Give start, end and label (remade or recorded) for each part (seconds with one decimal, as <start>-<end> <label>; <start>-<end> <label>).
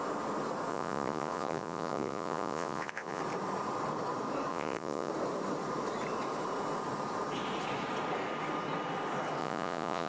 0.0-0.7 recorded; 0.7-3.2 remade; 3.2-4.5 recorded; 4.5-5.1 remade; 5.1-9.4 recorded; 9.4-10.1 remade